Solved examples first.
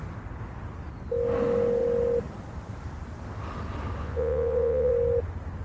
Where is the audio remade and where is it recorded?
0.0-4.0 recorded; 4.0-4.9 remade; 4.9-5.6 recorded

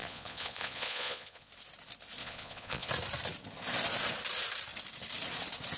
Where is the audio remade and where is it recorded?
0.0-1.5 remade; 1.5-2.2 recorded; 2.2-2.9 remade; 2.9-5.8 recorded

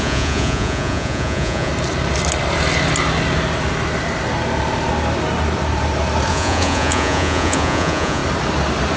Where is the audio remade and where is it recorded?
0.0-1.7 remade; 1.7-6.3 recorded; 6.3-8.2 remade; 8.2-9.0 recorded

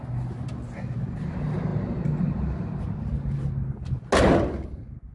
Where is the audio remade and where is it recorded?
0.0-5.1 recorded

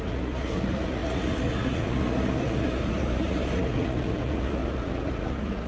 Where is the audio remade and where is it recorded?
0.0-5.7 remade

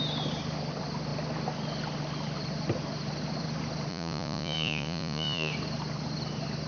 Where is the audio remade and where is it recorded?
0.0-3.9 recorded; 3.9-5.5 remade; 5.5-6.7 recorded

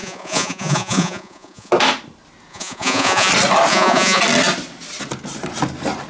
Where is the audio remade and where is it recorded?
0.0-1.7 remade; 1.7-2.5 recorded; 2.5-3.3 remade; 3.3-3.7 recorded; 3.7-4.2 remade; 4.2-6.1 recorded